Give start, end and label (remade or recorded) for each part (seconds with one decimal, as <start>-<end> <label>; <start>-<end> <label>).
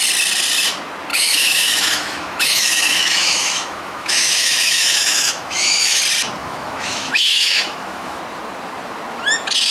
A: 0.0-1.1 recorded; 1.1-6.0 remade; 6.0-6.4 recorded; 6.4-8.2 remade; 8.2-9.7 recorded